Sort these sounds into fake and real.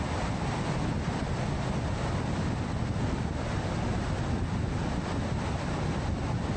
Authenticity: real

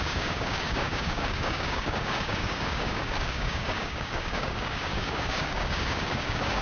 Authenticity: fake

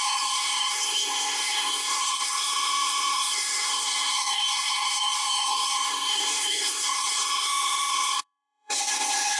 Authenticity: fake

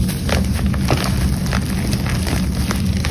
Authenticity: real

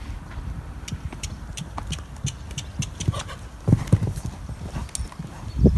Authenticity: real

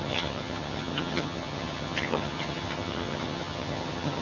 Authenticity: fake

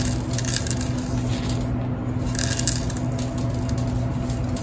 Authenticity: real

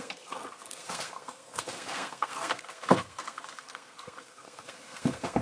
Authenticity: fake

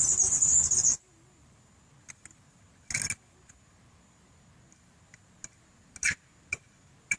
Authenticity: real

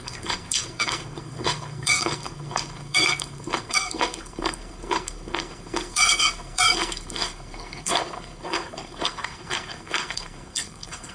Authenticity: fake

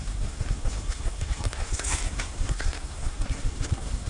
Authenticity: fake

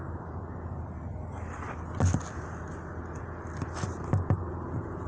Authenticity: real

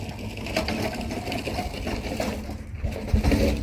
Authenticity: real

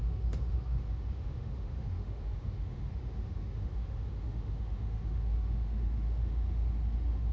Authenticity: fake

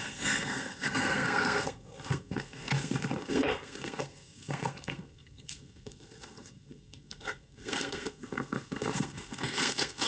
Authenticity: fake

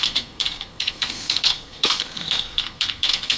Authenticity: fake